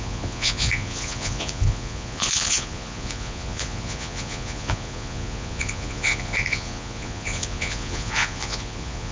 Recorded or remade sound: remade